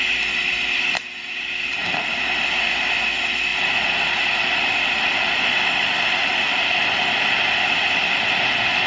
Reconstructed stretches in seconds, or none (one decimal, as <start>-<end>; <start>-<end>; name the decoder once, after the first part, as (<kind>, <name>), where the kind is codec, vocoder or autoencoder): none